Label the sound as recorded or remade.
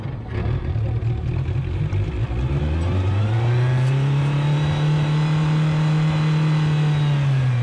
recorded